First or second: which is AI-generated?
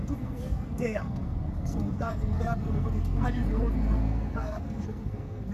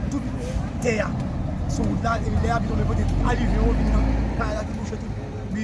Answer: first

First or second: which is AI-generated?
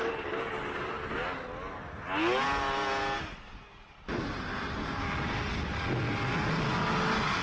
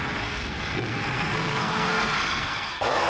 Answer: second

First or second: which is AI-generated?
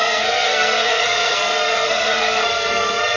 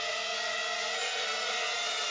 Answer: first